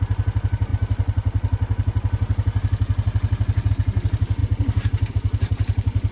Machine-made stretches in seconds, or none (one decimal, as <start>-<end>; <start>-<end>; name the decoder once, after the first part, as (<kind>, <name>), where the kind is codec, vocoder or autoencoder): none